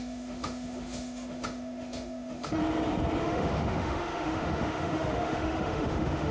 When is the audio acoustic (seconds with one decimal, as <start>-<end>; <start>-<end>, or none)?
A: 2.6-3.2

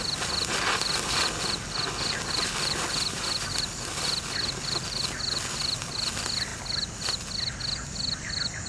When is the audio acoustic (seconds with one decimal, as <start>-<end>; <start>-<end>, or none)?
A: 0.0-8.7

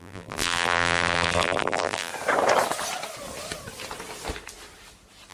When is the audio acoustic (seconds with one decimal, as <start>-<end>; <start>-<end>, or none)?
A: 2.1-5.3

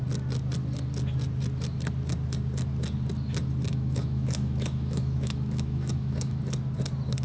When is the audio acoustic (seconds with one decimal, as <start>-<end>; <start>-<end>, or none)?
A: 0.0-3.7; 6.4-7.2

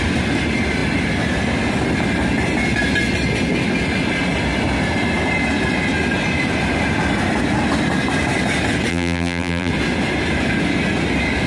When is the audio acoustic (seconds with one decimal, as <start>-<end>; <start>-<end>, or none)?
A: 0.0-8.9; 9.7-11.5

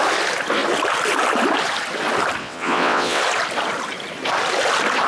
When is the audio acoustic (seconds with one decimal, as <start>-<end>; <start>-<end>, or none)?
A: 0.0-2.4; 3.2-5.1